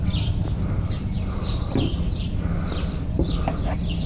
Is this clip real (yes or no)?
yes